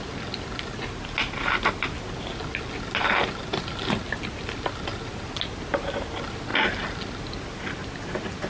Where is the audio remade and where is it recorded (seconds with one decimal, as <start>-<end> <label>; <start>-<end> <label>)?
0.0-8.5 recorded